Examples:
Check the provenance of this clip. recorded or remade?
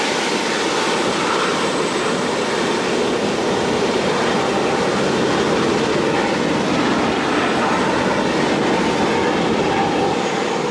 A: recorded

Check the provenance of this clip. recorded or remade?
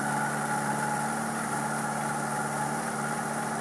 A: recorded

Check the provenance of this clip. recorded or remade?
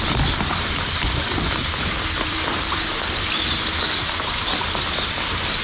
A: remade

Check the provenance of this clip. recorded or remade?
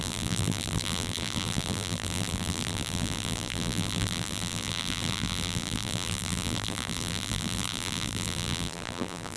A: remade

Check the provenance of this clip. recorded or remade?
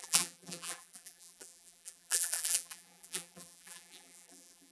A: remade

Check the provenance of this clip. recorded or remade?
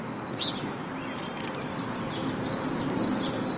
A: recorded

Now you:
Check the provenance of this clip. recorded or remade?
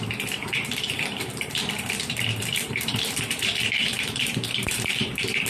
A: remade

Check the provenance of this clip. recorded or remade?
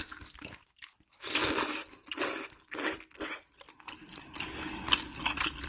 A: recorded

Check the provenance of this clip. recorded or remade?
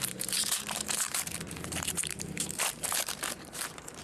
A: remade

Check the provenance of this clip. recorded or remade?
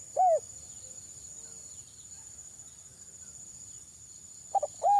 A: recorded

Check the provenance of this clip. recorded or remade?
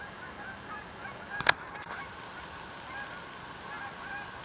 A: recorded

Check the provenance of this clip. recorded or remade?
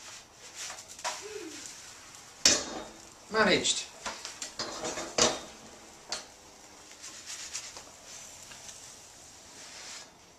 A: recorded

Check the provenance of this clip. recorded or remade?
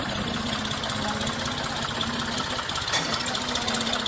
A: recorded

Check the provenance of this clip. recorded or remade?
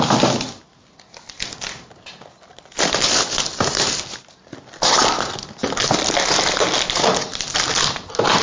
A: recorded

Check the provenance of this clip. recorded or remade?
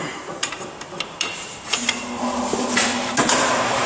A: remade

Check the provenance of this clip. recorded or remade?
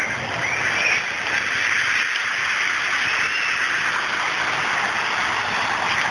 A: recorded